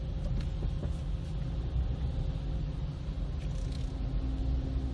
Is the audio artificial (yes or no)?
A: no